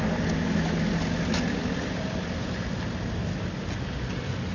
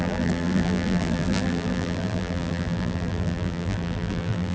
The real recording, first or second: first